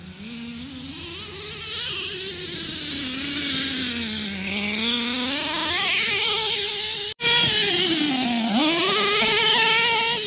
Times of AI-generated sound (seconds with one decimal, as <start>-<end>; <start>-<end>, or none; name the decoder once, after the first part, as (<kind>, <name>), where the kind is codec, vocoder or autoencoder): 1.8-3.0 (vocoder, BigVGAN v2); 5.6-8.0